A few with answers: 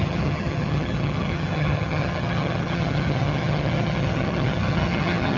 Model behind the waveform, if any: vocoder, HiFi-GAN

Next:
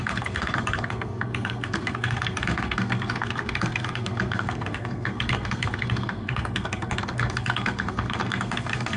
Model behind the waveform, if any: codec, SNAC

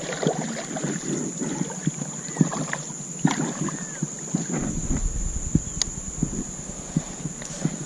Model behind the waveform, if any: none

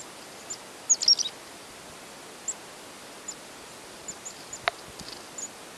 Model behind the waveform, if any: none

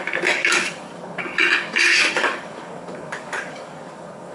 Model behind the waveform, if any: codec, DAC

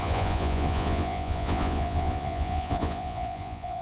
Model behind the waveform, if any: vocoder, Vocos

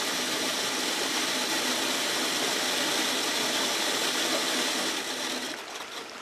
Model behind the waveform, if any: none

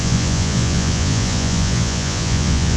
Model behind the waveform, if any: vocoder, Vocos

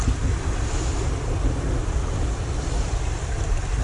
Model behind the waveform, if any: vocoder, BigVGAN v2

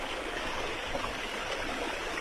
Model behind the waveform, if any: codec, DAC